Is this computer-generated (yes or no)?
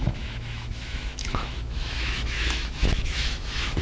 yes